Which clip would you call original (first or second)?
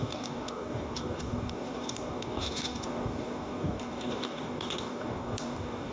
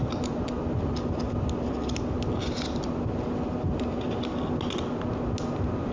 second